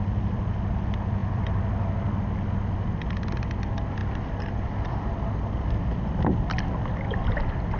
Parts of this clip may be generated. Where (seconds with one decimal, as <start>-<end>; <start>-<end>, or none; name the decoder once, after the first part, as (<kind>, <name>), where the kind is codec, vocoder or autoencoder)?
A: none